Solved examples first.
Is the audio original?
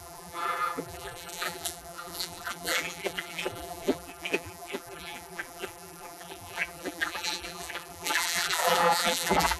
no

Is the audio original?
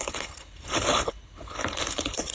no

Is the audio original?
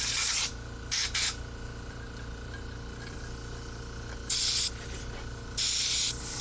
yes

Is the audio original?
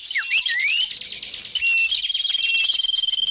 yes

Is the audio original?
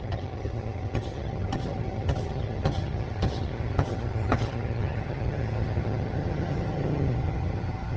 no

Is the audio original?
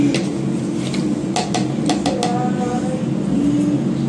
yes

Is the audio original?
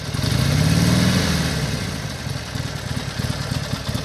yes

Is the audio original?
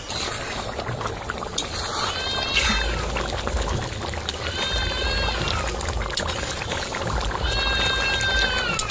yes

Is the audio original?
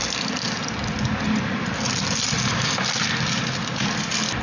yes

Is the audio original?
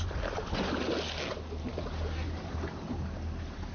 yes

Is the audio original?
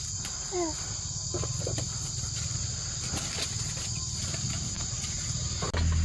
yes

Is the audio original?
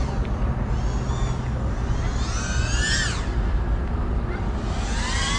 yes